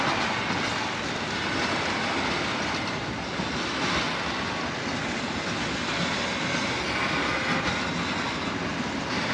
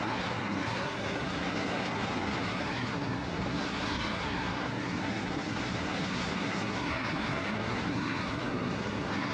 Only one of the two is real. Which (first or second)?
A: first